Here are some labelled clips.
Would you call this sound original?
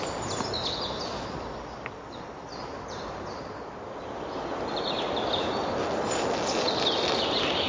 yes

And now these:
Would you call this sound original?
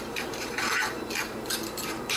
no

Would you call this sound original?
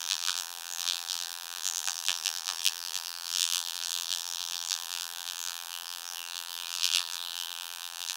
no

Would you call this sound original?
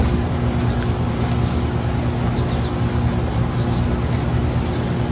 yes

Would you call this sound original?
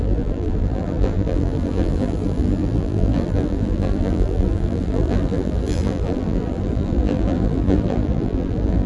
no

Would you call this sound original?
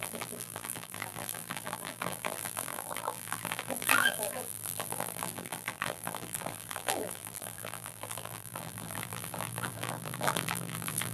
no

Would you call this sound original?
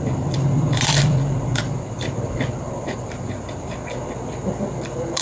no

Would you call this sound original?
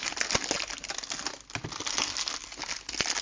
yes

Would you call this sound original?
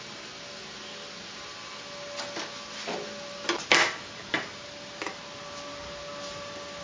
yes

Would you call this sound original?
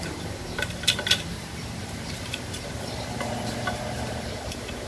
no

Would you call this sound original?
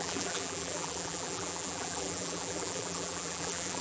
no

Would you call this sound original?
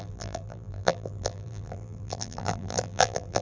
no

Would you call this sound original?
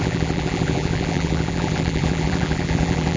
no